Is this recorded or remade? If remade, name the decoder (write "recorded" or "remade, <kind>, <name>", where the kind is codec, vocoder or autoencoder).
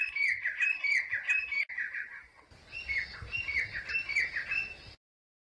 recorded